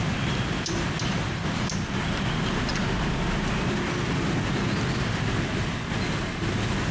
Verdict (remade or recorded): recorded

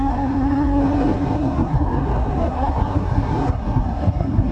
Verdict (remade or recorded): remade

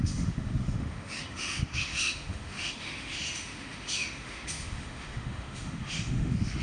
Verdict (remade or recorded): remade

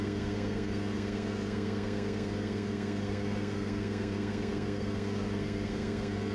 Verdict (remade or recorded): remade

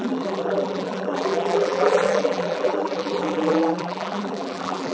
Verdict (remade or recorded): remade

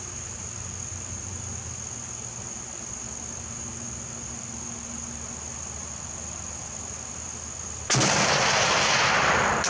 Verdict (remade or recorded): recorded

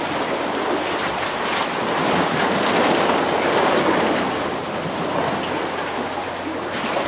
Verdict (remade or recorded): recorded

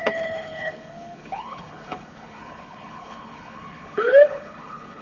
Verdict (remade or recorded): remade